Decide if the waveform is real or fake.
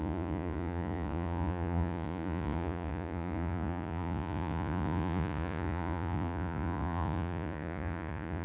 fake